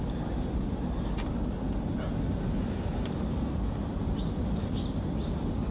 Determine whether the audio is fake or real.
real